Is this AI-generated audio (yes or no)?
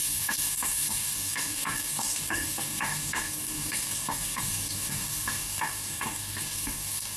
yes